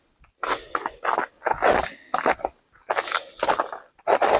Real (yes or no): yes